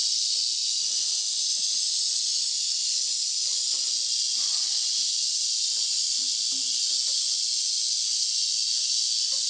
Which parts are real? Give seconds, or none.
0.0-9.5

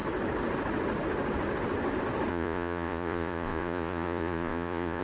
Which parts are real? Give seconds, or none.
0.0-2.3

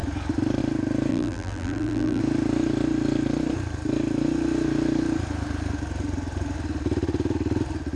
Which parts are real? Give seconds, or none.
0.0-1.1; 2.2-8.0

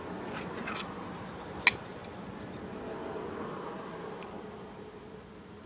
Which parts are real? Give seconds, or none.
0.0-5.7

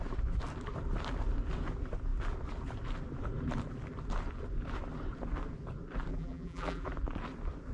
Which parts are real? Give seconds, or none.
0.0-6.1; 6.9-7.7

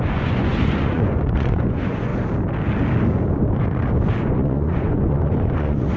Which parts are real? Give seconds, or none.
2.1-4.2

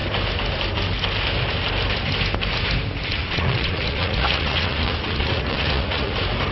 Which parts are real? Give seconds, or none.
0.0-3.1; 6.1-6.5